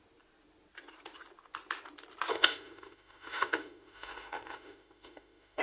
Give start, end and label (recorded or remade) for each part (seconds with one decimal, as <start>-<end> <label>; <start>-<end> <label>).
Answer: 0.0-2.3 recorded; 2.3-5.6 remade